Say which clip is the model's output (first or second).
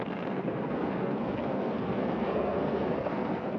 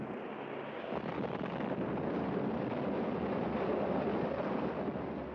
first